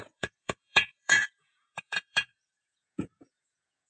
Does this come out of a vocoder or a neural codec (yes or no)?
yes